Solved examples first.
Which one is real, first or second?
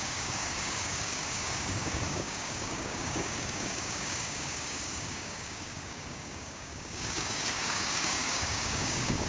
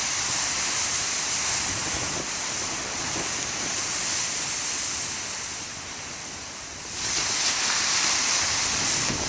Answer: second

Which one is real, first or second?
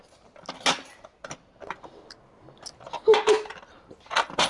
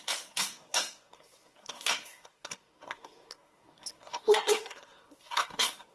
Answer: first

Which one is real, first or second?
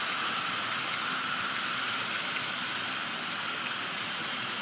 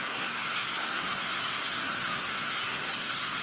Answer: first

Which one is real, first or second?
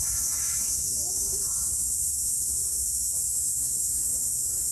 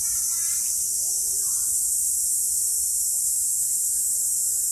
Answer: second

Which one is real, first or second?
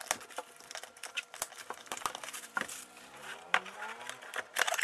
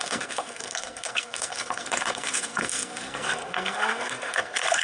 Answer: first